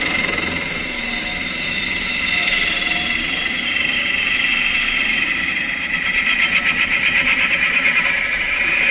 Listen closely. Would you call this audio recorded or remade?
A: remade